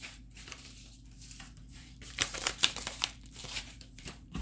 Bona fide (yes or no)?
no